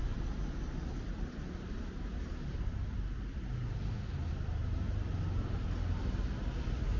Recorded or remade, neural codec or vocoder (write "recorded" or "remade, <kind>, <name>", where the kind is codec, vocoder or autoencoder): recorded